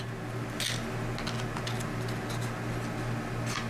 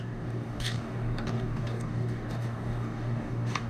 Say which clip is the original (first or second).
first